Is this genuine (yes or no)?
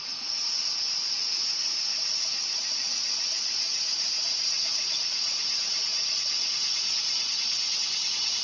no